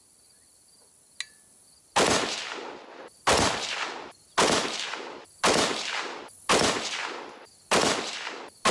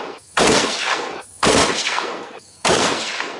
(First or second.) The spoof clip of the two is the second